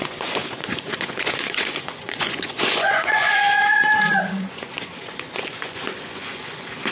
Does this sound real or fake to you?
fake